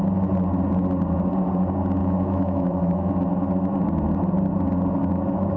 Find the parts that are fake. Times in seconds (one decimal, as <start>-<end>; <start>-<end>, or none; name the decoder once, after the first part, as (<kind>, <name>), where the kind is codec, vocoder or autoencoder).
2.0-3.1 (autoencoder, DAC-VAE)